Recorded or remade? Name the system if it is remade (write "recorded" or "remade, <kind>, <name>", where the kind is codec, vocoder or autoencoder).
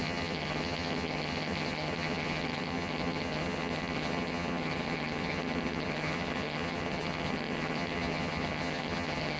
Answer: remade, vocoder, HiFi-GAN